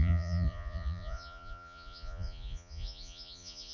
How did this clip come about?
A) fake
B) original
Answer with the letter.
A